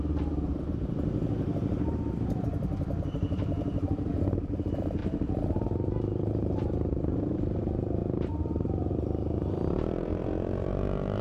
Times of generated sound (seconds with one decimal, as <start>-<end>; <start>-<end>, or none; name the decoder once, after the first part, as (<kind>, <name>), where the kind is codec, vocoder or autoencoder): 0.0-11.2 (vocoder, BigVGAN v2)